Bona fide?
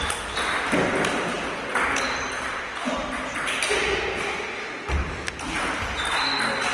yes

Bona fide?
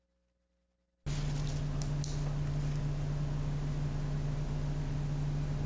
yes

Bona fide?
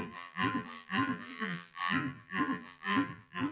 no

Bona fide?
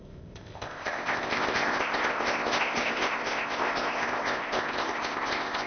no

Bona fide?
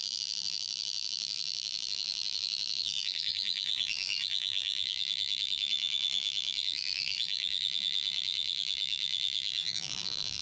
no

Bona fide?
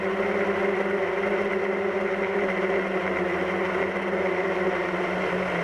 yes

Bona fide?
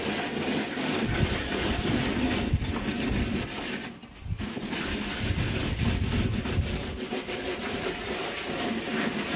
yes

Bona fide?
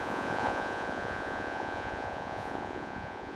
no